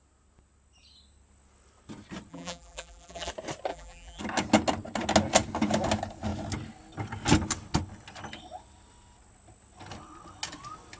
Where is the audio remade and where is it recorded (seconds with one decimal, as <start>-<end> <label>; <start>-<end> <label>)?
0.0-2.3 recorded; 2.3-3.3 remade; 3.3-3.7 recorded; 3.7-4.2 remade; 4.2-11.0 recorded